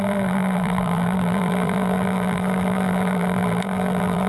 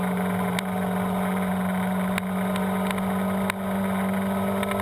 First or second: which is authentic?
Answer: second